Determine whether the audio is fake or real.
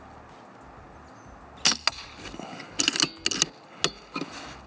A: real